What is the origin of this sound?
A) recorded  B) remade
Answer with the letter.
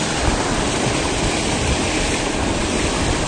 A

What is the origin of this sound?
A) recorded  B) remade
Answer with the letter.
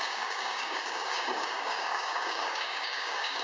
B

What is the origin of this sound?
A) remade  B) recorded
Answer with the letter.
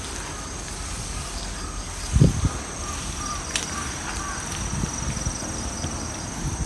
B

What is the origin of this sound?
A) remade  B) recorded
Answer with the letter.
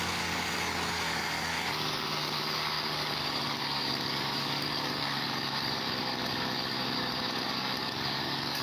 A